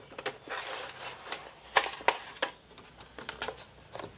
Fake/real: real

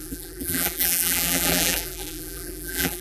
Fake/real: fake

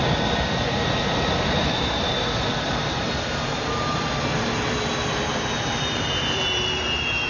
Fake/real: fake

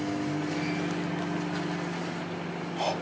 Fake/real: real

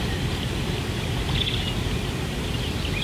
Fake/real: real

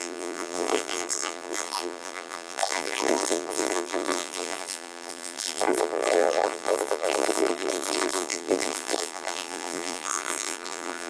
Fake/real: fake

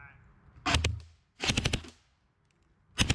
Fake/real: real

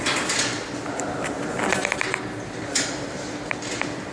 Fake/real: fake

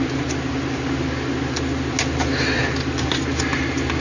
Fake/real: real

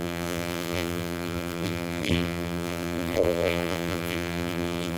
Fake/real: fake